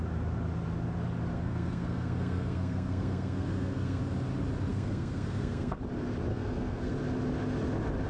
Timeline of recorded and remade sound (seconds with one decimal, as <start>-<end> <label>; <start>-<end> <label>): 0.0-1.3 recorded; 1.3-4.0 remade; 4.0-4.7 recorded; 4.7-5.8 remade; 5.8-6.3 recorded; 6.3-6.9 remade; 6.9-8.1 recorded